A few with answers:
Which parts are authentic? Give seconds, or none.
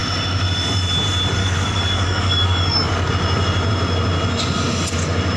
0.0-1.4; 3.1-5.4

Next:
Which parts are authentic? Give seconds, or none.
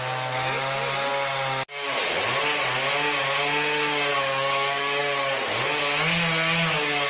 0.0-4.1; 5.0-7.1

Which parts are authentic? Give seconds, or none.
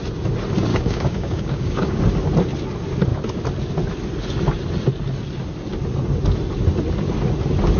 0.0-0.7; 2.0-7.8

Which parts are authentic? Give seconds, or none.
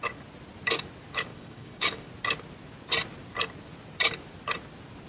0.0-1.3; 2.1-5.1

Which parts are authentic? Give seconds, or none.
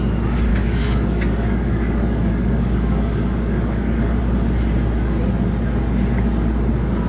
0.0-0.5; 4.2-7.1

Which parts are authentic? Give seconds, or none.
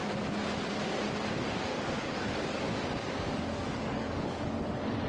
0.0-1.7; 4.6-5.1